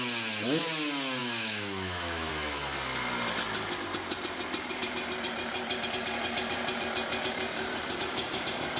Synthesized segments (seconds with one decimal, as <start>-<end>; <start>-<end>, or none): 1.2-2.3